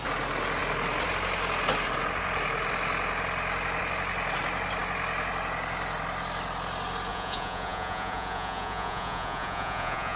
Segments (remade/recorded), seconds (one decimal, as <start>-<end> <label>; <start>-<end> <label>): 0.0-7.1 recorded; 7.1-10.2 remade